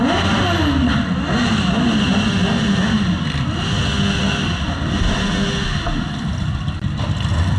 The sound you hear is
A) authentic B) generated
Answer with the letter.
A